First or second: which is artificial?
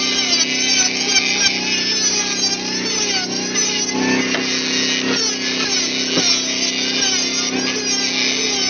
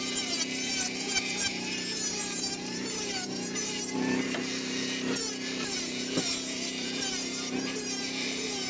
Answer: second